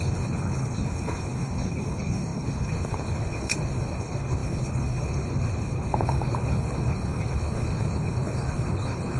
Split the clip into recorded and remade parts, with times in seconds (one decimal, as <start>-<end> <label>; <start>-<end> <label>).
0.0-9.2 remade